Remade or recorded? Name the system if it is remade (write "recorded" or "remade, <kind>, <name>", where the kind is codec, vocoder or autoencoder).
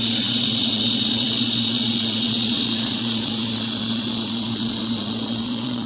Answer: remade, vocoder, Vocos